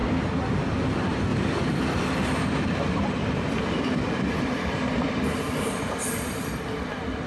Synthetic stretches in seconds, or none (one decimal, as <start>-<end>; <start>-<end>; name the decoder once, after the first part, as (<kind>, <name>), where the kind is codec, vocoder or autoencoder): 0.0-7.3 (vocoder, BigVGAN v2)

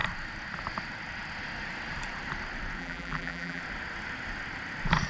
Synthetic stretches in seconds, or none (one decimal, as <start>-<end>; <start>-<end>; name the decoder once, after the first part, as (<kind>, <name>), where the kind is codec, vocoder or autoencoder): 2.8-3.6 (vocoder, BigVGAN v2)

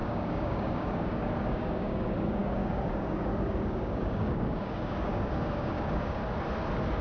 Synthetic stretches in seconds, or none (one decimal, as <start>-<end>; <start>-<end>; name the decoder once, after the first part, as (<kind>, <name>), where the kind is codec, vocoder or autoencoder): 0.0-6.2 (codec, DAC)